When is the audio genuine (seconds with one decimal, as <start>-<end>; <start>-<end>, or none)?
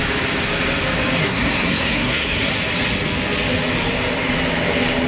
0.0-1.2; 2.5-5.1